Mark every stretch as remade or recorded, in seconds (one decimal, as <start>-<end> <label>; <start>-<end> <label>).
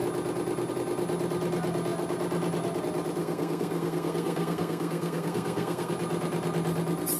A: 0.0-3.2 recorded; 3.2-5.9 remade; 5.9-7.2 recorded